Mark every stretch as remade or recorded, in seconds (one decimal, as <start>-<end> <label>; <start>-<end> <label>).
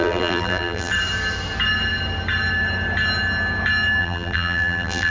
0.0-0.9 remade; 0.9-4.0 recorded; 4.0-5.1 remade